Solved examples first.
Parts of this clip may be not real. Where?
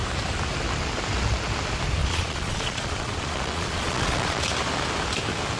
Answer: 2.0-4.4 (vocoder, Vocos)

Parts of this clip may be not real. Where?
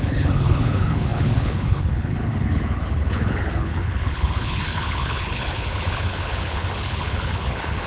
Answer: 0.0-7.9 (codec, HILCodec)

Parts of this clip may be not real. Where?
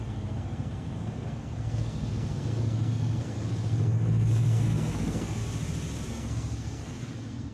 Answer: 0.0-5.4 (codec, SNAC); 6.1-7.5